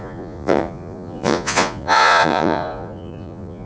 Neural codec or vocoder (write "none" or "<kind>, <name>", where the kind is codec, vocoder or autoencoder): vocoder, Vocos